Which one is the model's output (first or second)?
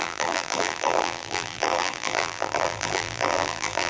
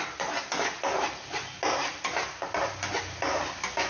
first